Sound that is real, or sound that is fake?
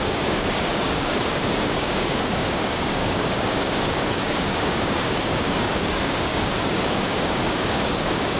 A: fake